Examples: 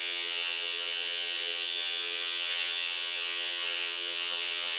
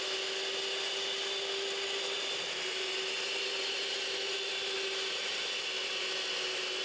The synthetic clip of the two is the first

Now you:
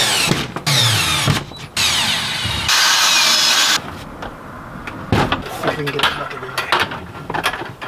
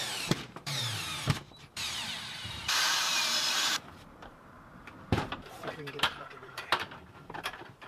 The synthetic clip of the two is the second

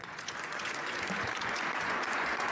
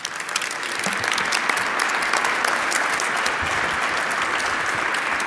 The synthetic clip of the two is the first